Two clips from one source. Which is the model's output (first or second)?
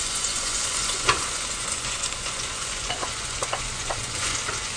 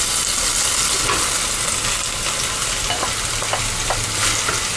first